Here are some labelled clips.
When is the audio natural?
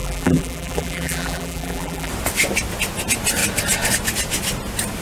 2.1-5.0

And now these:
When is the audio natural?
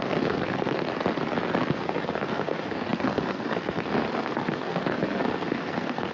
0.9-1.7